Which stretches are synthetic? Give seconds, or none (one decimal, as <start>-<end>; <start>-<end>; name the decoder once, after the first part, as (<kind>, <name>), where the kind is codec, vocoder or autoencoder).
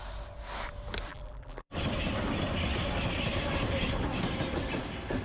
1.1-1.7 (vocoder, BigVGAN v2)